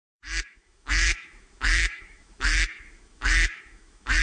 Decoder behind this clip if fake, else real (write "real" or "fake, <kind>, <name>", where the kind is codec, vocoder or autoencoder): fake, autoencoder, DAC-VAE